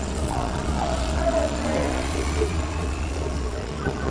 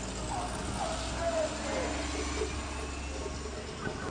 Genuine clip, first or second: second